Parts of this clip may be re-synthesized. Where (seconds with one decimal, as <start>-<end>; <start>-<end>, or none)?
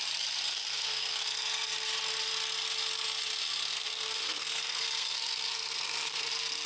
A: 0.5-1.7; 3.7-6.3